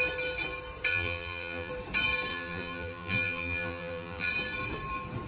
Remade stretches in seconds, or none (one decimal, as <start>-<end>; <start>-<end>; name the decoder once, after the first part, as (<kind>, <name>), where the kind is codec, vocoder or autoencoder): 0.9-1.7 (vocoder, BigVGAN v2); 2.3-4.3